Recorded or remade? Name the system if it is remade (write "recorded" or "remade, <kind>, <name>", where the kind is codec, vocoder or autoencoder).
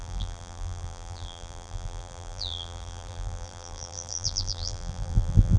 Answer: remade, vocoder, BigVGAN v2